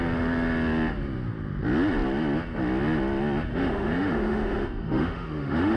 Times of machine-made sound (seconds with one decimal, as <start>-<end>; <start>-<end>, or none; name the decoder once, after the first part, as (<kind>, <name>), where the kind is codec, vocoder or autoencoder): 3.5-5.8 (autoencoder, DAC-VAE)

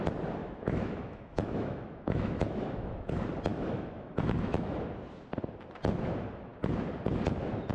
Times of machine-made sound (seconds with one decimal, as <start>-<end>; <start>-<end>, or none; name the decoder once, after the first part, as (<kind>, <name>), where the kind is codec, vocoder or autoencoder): 0.4-3.1 (autoencoder, DAC-VAE); 3.5-4.7

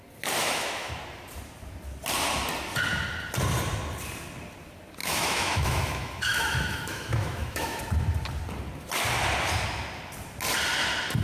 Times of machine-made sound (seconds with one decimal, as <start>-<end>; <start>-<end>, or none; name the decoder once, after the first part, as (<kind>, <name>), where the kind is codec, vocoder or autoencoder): 0.4-0.9 (autoencoder, DAC-VAE); 5.0-7.8

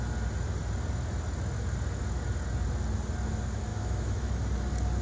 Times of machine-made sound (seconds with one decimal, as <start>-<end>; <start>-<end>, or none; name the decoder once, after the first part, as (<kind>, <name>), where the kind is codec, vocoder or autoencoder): 3.7-4.3 (autoencoder, DAC-VAE)

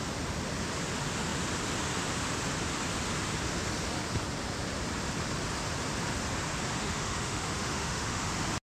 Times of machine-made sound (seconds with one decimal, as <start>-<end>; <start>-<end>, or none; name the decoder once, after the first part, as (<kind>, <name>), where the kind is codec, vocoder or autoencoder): 6.8-8.3 (autoencoder, DAC-VAE)

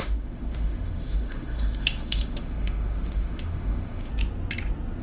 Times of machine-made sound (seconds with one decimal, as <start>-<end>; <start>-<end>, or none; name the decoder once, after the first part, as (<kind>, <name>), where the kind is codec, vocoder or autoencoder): 0.0-4.1 (autoencoder, DAC-VAE)

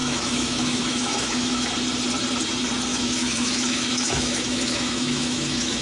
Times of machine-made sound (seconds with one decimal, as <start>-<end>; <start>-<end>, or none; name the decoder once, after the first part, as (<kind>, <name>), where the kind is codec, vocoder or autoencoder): 0.0-1.7 (autoencoder, DAC-VAE); 2.9-5.8